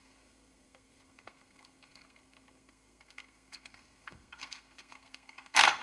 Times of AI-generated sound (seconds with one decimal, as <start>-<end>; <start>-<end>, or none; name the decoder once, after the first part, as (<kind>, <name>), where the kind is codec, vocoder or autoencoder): 0.0-5.8 (codec, SNAC)